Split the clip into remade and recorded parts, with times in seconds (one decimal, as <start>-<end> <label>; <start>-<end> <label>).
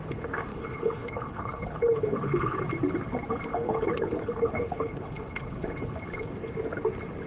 0.0-0.5 recorded; 0.5-2.6 remade; 2.6-3.5 recorded; 3.5-6.3 remade; 6.3-7.3 recorded